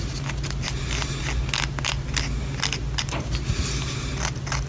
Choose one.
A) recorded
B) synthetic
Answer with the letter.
A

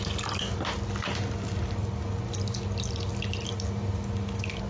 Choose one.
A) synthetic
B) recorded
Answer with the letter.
B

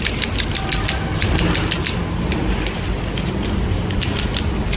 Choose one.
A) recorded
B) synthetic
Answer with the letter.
B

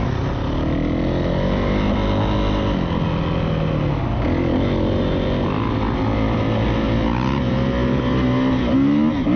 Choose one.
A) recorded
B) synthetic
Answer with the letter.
A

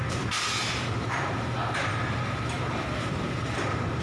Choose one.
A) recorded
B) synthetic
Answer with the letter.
B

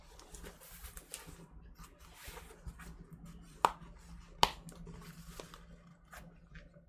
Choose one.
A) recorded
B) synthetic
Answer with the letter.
A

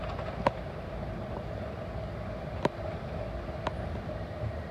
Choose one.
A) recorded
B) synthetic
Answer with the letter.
A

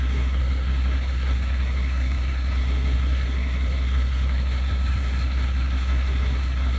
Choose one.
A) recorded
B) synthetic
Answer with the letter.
B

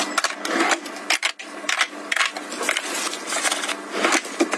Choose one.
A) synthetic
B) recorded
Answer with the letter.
B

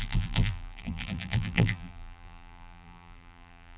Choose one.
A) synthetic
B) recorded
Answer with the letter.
A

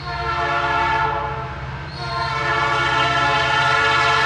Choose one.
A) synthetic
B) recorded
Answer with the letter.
B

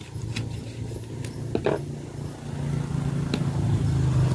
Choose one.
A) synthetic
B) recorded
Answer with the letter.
B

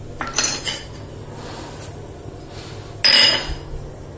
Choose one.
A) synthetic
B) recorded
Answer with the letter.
B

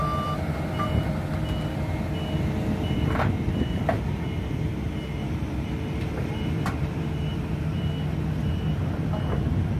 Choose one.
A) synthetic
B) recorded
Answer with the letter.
A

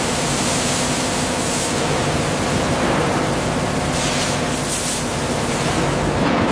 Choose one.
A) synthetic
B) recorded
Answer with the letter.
B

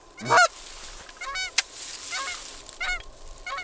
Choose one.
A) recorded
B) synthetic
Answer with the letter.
A